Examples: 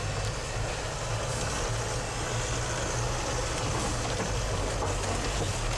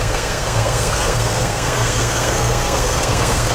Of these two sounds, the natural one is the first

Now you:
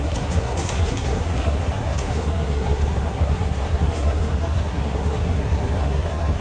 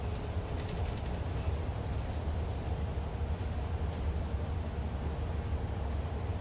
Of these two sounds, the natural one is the second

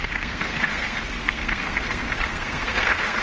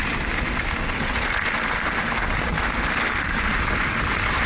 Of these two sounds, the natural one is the second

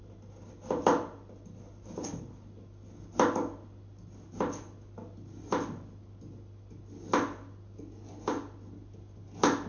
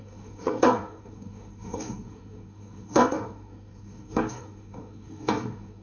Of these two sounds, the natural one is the first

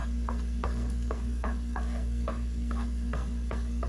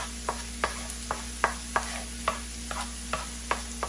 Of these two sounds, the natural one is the second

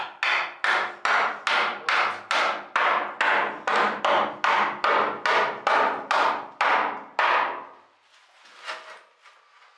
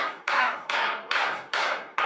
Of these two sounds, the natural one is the first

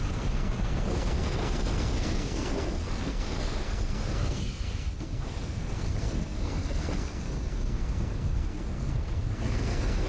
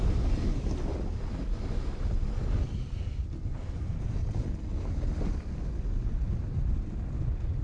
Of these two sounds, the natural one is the second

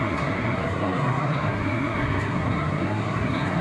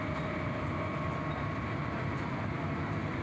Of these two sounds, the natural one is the second